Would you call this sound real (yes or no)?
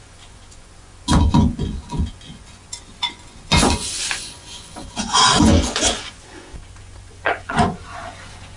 no